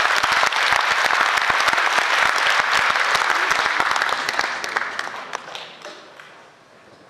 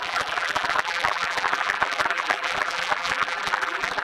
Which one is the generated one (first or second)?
second